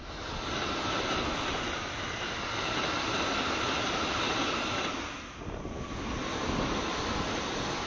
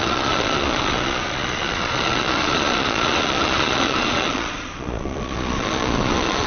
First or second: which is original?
first